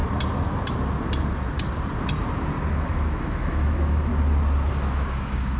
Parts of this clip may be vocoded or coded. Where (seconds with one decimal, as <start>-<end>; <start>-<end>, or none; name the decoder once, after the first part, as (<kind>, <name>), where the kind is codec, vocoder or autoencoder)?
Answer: 2.7-4.1 (autoencoder, DAC-VAE); 4.7-5.6